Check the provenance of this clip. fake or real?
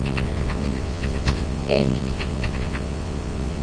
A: fake